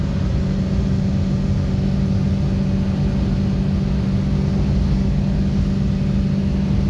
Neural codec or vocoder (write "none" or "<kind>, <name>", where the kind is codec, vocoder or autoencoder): none